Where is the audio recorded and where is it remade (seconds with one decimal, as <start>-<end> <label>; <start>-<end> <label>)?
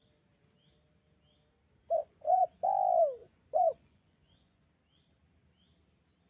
0.0-2.0 recorded; 2.0-2.7 remade; 2.7-3.2 recorded; 3.2-4.7 remade; 4.7-6.3 recorded